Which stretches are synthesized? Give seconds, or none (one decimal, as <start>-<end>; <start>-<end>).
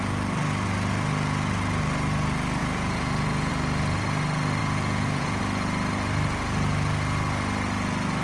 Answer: 2.6-3.5; 4.6-5.4